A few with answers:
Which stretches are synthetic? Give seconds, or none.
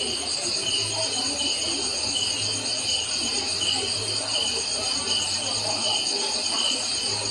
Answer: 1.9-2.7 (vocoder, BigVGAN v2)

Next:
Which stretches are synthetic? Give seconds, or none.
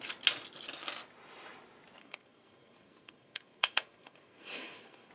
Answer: 2.0-5.1 (codec, SNAC)